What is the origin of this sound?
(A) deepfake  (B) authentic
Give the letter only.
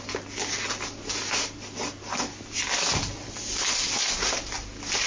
B